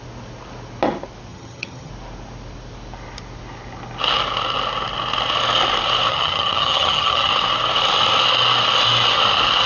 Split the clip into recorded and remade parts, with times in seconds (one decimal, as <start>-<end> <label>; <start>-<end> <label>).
0.0-1.3 recorded; 1.3-1.9 remade; 1.9-6.1 recorded; 6.1-7.3 remade; 7.3-9.7 recorded